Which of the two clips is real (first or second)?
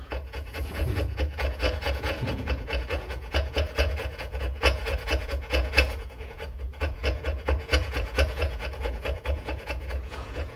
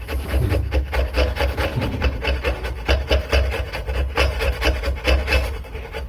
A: second